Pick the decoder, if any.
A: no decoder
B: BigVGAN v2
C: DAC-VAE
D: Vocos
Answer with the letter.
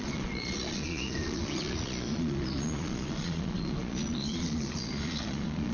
D